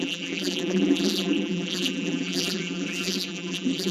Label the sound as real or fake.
fake